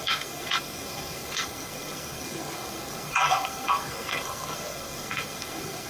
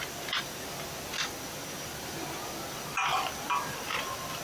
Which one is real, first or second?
second